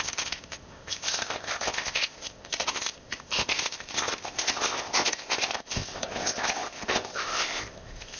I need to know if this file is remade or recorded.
remade